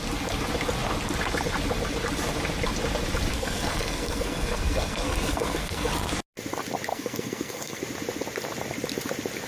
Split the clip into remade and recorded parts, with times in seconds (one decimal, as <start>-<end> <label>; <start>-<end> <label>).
0.0-3.3 recorded; 3.3-5.9 remade; 5.9-6.9 recorded; 6.9-7.8 remade; 7.8-9.5 recorded